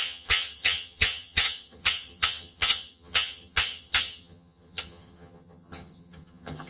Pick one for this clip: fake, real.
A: fake